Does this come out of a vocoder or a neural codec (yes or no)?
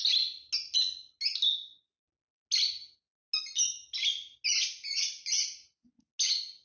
no